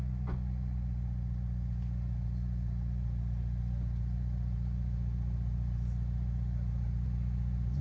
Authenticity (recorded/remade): recorded